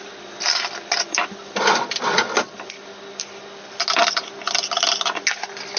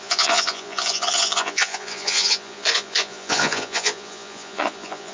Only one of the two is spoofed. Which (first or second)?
second